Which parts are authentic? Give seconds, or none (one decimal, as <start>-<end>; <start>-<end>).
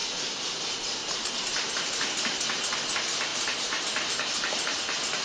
0.0-1.0; 1.7-3.3; 4.8-5.2